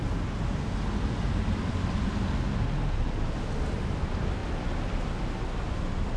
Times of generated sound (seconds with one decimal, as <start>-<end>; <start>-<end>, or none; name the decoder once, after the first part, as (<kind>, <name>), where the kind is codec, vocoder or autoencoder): none